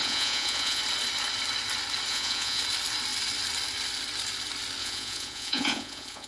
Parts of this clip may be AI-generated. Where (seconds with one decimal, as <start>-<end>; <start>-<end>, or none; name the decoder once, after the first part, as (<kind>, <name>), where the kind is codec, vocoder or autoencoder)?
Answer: 0.0-0.8 (vocoder, Vocos); 2.1-2.6; 4.8-6.3